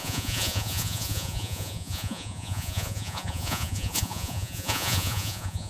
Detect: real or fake fake